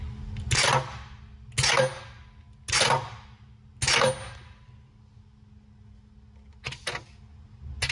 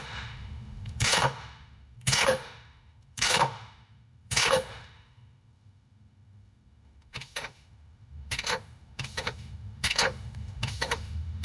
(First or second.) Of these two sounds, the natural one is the first